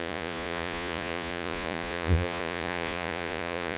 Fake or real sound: fake